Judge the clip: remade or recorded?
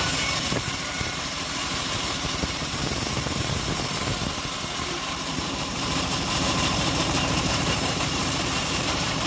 remade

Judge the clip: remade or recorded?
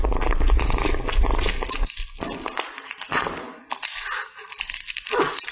recorded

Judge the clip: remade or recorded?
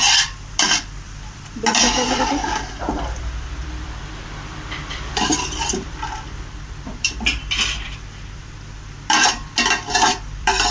remade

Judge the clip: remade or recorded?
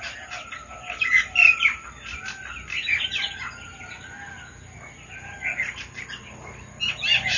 recorded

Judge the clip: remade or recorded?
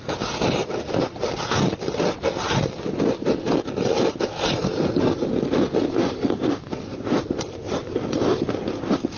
remade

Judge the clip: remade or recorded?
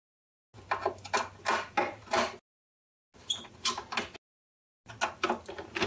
recorded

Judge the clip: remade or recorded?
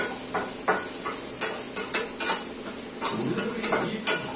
recorded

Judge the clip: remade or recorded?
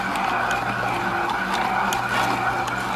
recorded